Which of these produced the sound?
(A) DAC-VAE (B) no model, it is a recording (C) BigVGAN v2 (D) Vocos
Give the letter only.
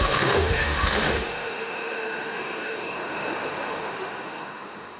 A